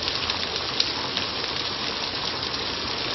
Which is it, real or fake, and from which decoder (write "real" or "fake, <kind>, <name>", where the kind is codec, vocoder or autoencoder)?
real